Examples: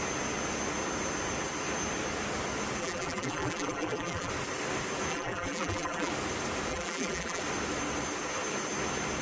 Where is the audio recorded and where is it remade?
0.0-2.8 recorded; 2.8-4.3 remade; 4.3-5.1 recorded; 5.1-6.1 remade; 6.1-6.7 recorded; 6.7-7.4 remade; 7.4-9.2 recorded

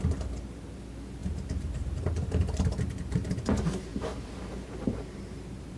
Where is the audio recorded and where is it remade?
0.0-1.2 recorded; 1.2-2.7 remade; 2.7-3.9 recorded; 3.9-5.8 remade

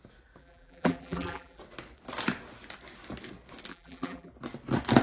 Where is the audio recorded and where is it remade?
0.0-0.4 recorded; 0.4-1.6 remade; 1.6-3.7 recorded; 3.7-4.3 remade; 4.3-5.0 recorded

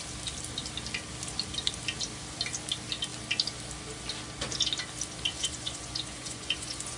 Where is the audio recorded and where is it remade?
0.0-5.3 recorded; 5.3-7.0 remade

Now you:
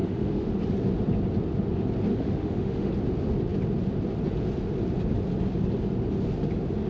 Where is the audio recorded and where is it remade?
0.0-0.5 remade; 0.5-2.1 recorded; 2.1-2.9 remade; 2.9-6.9 recorded

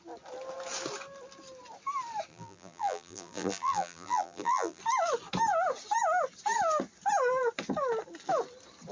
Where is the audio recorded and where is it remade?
0.0-2.3 recorded; 2.3-4.8 remade; 4.8-8.9 recorded

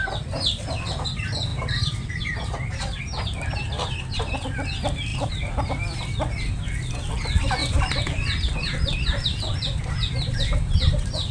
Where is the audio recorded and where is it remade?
0.0-1.5 recorded; 1.5-3.0 remade; 3.0-5.1 recorded; 5.1-5.8 remade; 5.8-7.6 recorded; 7.6-9.8 remade; 9.8-11.3 recorded